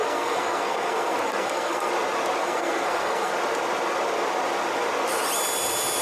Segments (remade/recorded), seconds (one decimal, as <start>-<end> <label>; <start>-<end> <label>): 0.0-1.9 remade; 1.9-2.4 recorded; 2.4-3.3 remade; 3.3-6.0 recorded